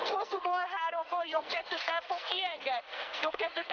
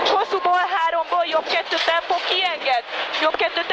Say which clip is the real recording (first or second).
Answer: second